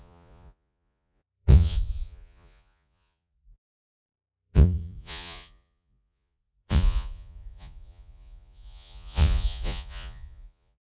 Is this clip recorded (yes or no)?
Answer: no